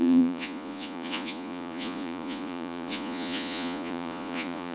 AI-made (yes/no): yes